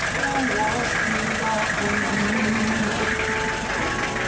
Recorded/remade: recorded